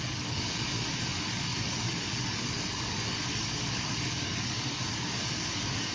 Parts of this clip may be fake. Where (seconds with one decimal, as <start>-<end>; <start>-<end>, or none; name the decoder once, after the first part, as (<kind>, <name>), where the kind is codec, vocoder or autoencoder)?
0.0-5.9 (codec, DAC)